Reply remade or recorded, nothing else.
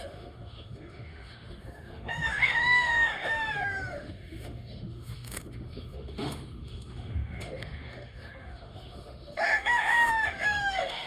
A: remade